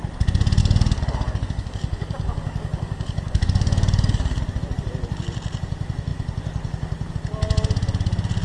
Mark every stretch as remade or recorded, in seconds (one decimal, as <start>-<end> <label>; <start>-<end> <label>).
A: 0.0-0.6 recorded; 0.6-4.4 remade; 4.4-8.4 recorded